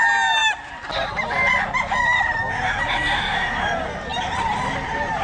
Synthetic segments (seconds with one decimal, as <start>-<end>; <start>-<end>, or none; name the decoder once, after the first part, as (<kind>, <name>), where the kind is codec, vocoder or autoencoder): none